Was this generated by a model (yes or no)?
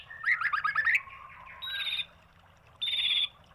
no